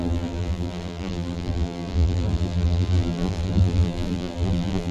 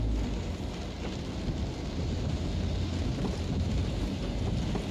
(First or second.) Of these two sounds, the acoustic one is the second